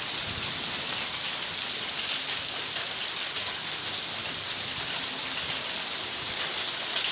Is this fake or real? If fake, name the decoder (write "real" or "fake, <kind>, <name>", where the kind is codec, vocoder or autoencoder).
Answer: real